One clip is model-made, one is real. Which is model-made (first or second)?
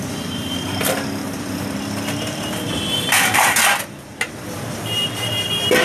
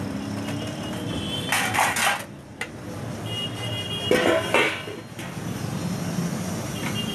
first